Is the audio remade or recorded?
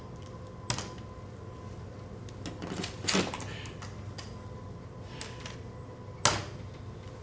recorded